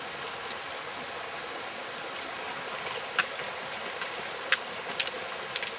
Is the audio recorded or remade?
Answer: recorded